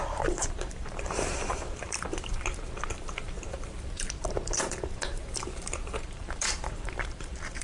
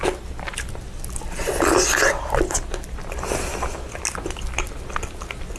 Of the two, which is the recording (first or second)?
second